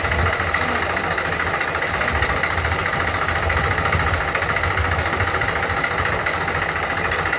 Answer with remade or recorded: recorded